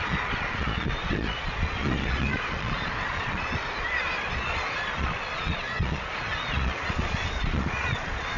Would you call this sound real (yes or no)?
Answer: no